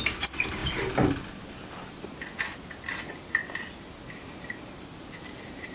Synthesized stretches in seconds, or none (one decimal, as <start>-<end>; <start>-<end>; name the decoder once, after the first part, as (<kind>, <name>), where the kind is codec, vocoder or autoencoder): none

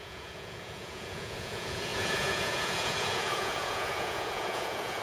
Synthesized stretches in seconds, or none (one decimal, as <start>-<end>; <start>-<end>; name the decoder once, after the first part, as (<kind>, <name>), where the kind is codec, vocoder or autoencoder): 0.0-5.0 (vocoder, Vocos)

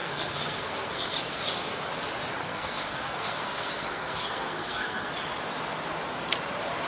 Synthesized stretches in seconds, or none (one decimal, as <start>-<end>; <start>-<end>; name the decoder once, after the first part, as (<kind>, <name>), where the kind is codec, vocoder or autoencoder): 0.0-1.9 (codec, SNAC); 2.4-5.1

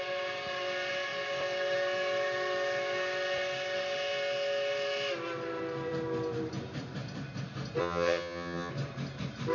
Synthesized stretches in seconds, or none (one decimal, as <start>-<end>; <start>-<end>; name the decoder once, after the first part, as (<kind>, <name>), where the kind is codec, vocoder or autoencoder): 7.8-8.7 (vocoder, HiFi-GAN)